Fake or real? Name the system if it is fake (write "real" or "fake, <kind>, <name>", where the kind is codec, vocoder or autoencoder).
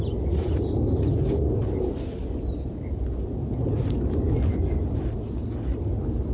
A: real